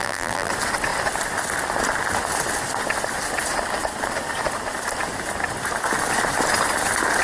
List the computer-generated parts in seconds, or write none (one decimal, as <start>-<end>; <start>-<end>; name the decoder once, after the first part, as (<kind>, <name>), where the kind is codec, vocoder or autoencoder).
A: 0.0-0.5 (vocoder, BigVGAN v2)